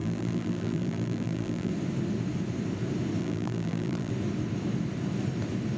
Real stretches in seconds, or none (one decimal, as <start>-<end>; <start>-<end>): 1.7-3.2; 4.1-5.8